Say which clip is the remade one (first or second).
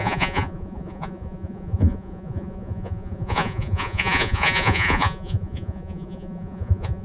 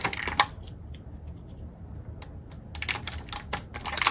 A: first